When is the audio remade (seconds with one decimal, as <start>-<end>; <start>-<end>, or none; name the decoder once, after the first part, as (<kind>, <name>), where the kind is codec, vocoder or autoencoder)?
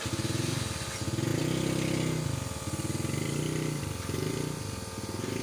none